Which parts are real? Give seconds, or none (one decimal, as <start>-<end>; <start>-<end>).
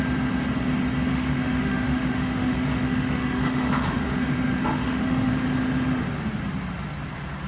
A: 0.0-1.1; 5.3-7.5